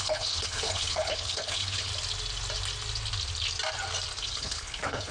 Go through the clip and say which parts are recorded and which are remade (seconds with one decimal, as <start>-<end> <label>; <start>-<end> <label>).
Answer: 0.0-1.9 remade; 1.9-4.2 recorded; 4.2-5.1 remade